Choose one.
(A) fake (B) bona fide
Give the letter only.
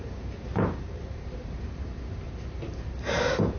A